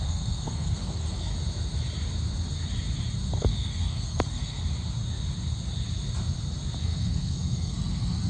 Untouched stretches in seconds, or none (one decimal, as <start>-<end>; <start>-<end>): 1.3-3.3; 4.6-6.8